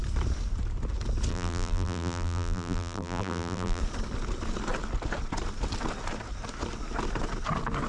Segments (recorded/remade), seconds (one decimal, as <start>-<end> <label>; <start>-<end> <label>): 0.0-1.3 recorded; 1.3-3.8 remade; 3.8-7.9 recorded